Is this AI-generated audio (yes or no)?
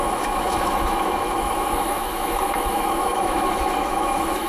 yes